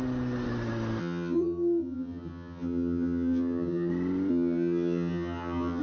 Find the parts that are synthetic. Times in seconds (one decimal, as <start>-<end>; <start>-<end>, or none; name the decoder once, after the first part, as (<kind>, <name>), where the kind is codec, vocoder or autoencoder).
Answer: 1.0-3.9 (vocoder, HiFi-GAN); 4.3-5.8